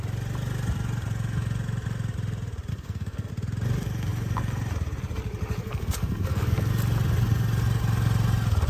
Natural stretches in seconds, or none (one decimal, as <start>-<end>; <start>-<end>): 0.0-2.7; 3.3-5.6; 6.7-8.7